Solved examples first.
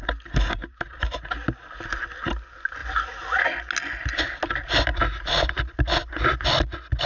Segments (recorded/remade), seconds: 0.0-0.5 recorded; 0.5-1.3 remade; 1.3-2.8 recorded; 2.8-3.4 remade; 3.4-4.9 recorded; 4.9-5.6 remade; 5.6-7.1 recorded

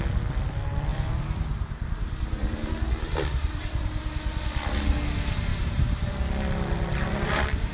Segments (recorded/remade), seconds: 0.0-0.9 recorded; 0.9-2.7 remade; 2.7-3.3 recorded; 3.3-4.4 remade; 4.4-5.5 recorded; 5.5-6.1 remade; 6.1-7.7 recorded

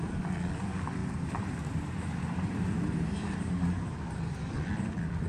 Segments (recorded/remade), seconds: 0.0-1.0 recorded; 1.0-4.2 remade; 4.2-5.3 recorded

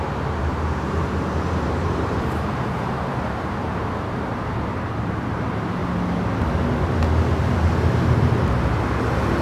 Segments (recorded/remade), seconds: 0.0-5.8 remade; 5.8-7.9 recorded; 7.9-9.4 remade

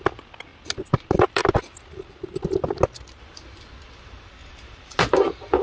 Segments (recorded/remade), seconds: 0.0-4.4 recorded; 4.4-5.0 remade; 5.0-5.6 recorded

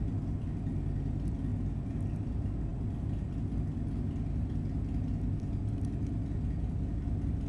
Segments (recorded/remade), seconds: 0.0-7.5 recorded

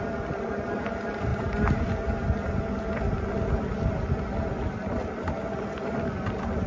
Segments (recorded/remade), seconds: 0.0-1.3 recorded; 1.3-2.2 remade; 2.2-6.7 recorded